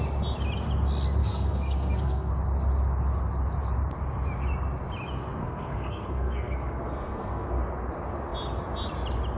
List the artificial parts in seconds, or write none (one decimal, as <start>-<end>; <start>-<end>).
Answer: 1.2-2.3; 5.4-7.6